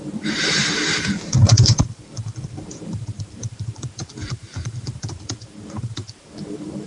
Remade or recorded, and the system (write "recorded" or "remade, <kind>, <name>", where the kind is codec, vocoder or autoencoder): remade, vocoder, BigVGAN v2